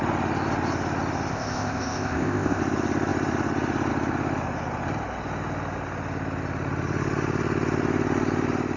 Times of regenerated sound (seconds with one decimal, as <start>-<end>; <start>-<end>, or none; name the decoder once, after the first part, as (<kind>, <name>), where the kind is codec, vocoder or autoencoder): 1.3-2.6 (codec, ZipCodec)